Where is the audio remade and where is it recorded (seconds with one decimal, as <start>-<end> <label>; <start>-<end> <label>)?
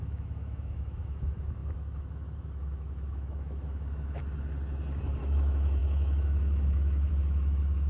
0.0-4.2 remade; 4.2-5.2 recorded; 5.2-7.9 remade